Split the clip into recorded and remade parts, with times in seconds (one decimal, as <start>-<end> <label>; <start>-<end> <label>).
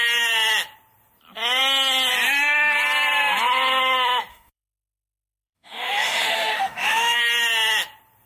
0.0-4.3 recorded; 4.3-7.2 remade; 7.2-8.3 recorded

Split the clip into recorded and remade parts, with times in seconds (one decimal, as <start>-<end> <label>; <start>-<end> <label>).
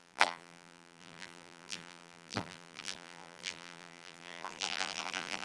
0.0-5.4 remade